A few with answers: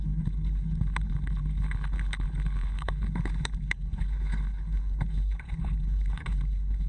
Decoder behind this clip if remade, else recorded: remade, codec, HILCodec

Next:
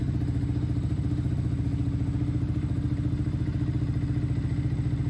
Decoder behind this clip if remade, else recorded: recorded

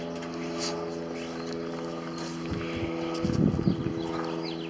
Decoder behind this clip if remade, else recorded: recorded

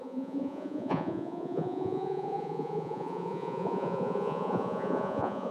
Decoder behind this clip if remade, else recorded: remade, vocoder, Vocos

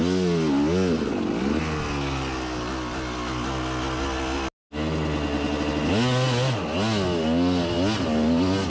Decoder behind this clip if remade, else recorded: recorded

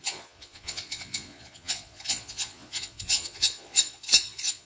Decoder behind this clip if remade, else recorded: remade, vocoder, Vocos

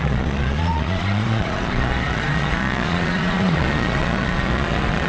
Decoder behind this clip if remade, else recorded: remade, vocoder, Vocos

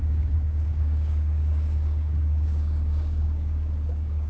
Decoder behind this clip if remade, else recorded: remade, codec, DAC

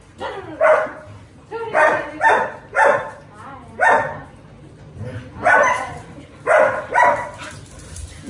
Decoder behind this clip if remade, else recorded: remade, vocoder, BigVGAN v2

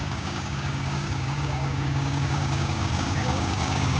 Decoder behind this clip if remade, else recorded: remade, codec, DAC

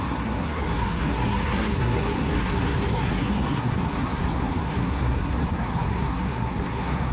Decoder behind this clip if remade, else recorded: remade, codec, SNAC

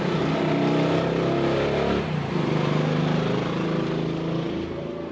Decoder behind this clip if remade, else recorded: recorded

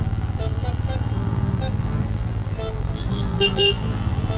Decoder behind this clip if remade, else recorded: remade, vocoder, BigVGAN v2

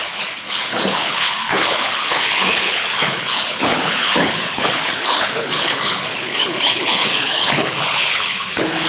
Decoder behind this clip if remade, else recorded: remade, codec, HILCodec